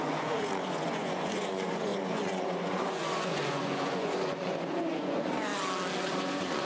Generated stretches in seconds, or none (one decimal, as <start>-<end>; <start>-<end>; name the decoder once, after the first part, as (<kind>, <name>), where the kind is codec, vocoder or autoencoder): 0.0-5.5 (vocoder, Vocos); 6.1-6.7